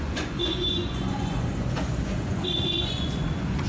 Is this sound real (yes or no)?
no